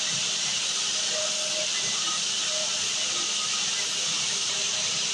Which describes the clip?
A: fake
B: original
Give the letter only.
A